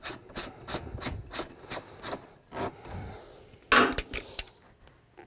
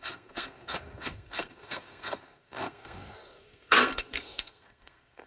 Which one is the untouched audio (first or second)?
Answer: first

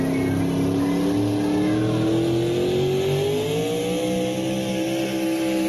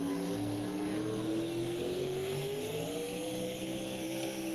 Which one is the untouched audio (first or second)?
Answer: first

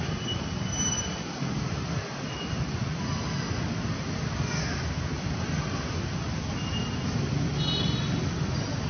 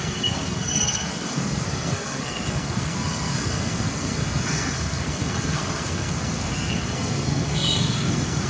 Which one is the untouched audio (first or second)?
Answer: first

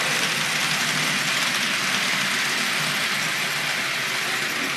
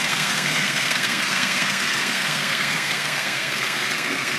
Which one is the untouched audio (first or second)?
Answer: first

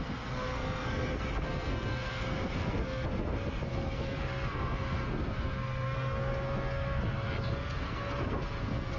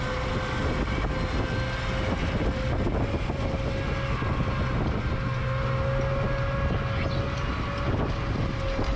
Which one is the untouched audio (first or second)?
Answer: second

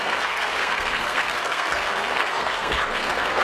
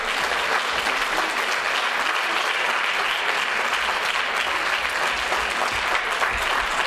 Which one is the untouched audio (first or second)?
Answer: second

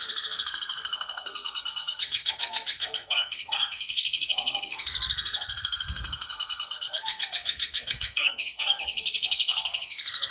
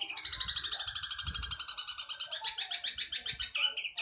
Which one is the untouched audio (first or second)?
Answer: second